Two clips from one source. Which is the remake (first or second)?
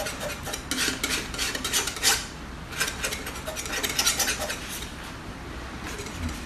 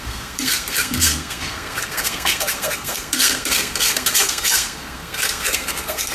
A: second